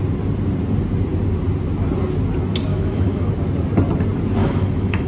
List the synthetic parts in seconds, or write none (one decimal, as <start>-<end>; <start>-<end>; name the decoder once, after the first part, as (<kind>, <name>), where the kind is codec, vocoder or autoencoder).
2.7-3.3 (autoencoder, DAC-VAE); 4.4-5.1

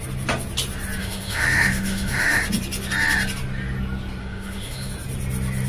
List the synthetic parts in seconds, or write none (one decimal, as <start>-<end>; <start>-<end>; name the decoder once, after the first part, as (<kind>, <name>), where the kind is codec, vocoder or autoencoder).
1.0-2.4 (autoencoder, DAC-VAE); 4.2-4.9